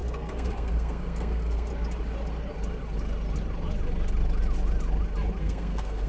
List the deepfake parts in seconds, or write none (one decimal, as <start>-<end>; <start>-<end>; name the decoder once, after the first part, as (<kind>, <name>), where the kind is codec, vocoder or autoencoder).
0.0-1.7 (codec, SNAC); 5.4-6.1